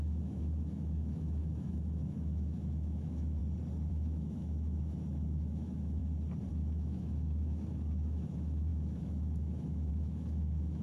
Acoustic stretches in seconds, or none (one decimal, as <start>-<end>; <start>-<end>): 3.4-3.9; 6.0-6.5

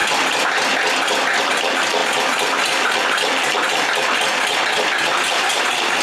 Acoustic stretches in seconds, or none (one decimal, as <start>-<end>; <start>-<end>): 0.0-6.0

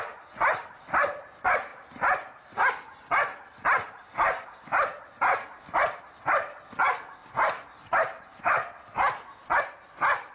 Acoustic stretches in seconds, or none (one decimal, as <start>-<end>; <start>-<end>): 0.0-10.3